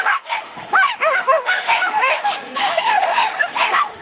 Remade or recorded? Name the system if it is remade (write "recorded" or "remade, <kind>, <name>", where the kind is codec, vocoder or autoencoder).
remade, autoencoder, DAC-VAE